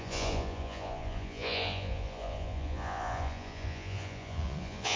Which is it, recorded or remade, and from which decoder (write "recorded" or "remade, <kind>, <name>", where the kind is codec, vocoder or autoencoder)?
remade, vocoder, Vocos